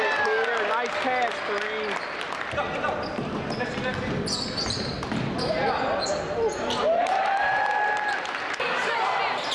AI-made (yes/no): no